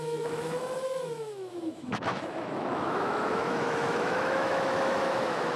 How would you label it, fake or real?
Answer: fake